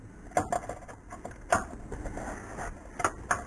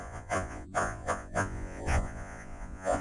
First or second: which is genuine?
first